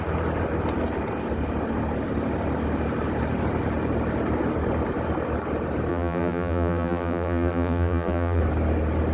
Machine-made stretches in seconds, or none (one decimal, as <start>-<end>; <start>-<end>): 5.9-8.4

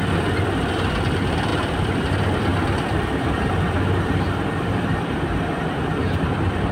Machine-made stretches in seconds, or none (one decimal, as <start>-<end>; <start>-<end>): 0.0-6.7

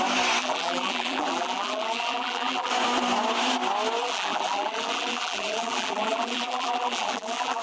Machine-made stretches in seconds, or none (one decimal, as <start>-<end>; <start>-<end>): 0.4-2.7; 4.0-7.6

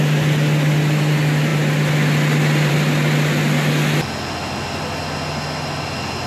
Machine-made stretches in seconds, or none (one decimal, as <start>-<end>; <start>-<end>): none

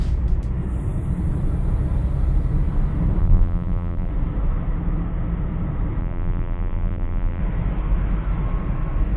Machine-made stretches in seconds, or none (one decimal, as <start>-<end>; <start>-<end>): 3.2-4.1; 6.0-7.4

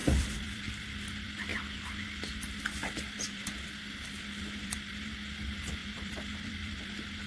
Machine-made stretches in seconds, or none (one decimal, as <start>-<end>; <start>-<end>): 0.0-0.7; 1.5-2.3; 2.8-5.1; 5.8-6.8

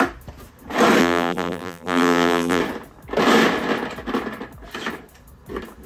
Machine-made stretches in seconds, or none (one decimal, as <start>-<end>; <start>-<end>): 1.0-2.6